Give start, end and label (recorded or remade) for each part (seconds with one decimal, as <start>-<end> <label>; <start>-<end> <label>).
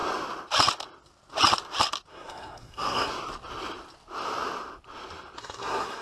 0.0-2.1 recorded; 2.1-3.1 remade; 3.1-5.4 recorded; 5.4-6.0 remade